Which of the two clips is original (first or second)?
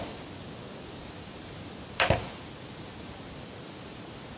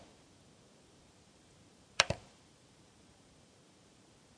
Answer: first